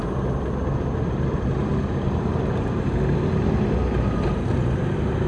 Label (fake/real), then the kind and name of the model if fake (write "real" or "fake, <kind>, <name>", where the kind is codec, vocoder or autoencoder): real